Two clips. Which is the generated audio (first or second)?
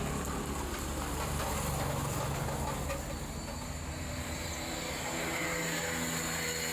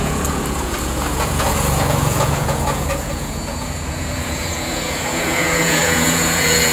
second